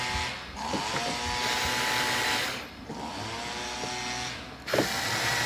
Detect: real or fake real